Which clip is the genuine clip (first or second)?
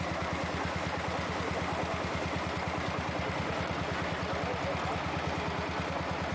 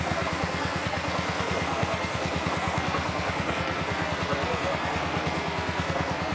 first